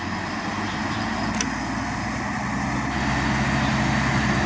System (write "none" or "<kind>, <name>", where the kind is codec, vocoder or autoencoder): none